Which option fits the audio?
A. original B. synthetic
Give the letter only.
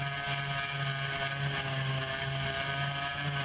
A